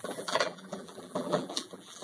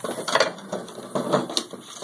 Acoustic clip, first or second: second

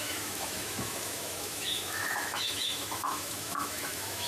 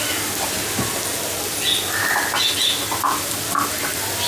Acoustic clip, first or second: second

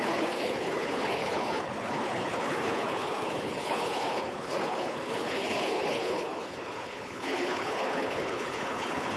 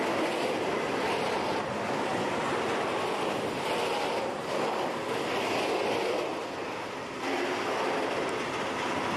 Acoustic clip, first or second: second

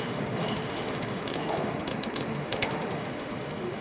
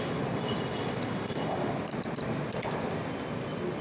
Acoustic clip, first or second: second